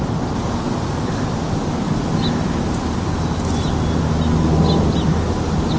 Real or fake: real